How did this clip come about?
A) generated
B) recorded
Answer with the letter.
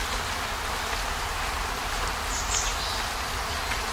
B